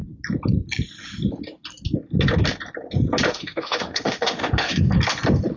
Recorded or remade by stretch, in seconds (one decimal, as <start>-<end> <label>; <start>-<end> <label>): 0.0-3.3 recorded; 3.3-4.9 remade; 4.9-5.6 recorded